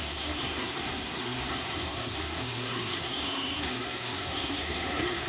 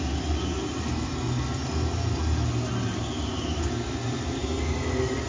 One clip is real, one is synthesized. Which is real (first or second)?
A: second